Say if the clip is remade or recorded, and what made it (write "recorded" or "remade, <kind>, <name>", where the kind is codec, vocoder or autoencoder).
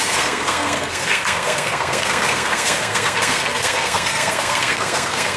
remade, codec, SNAC